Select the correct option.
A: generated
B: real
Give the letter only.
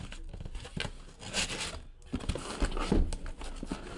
B